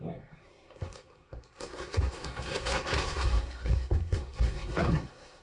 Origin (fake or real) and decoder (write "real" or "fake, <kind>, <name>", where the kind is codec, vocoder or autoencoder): fake, codec, SNAC